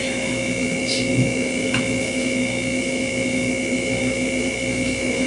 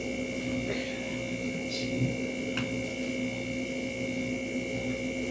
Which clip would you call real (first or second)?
second